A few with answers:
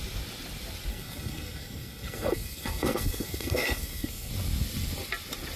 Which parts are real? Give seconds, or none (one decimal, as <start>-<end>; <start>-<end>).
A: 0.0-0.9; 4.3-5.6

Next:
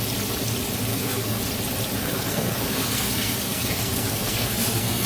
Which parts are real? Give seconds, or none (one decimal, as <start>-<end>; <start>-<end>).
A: 0.0-0.9; 1.4-2.0

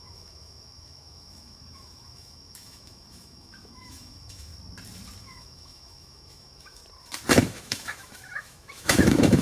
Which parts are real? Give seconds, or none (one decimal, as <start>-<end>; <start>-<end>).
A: 4.5-5.2; 6.8-7.4

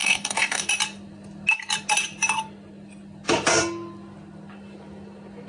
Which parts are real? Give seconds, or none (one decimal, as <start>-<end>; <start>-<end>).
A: 0.7-5.5

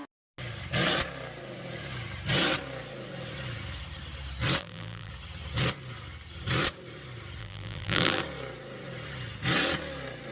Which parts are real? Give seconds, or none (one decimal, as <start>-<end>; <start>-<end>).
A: 0.0-4.6; 5.1-7.4; 8.2-10.3

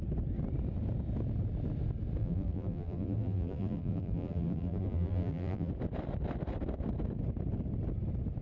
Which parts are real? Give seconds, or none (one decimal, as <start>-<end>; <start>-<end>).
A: 0.0-2.2; 5.7-8.4

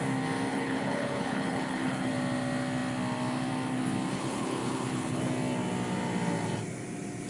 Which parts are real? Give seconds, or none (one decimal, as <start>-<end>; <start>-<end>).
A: 0.0-0.5; 2.1-4.1; 5.2-7.3